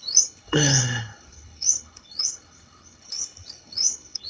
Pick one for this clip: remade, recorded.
remade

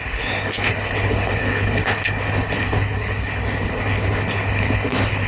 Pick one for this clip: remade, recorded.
remade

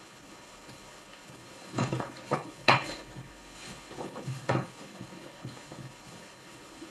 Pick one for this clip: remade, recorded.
remade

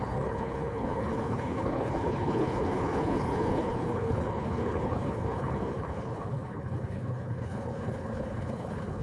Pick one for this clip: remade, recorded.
remade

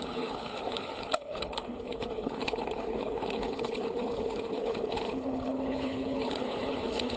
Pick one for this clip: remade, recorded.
remade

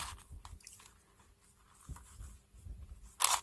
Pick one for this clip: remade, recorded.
recorded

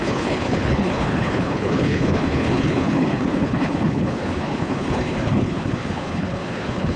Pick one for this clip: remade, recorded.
remade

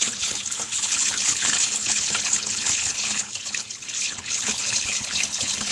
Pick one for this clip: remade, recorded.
remade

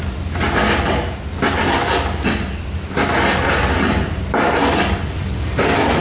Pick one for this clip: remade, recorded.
recorded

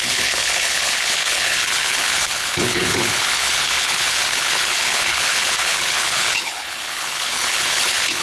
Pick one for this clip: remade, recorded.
remade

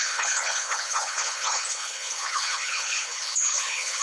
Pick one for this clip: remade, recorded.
remade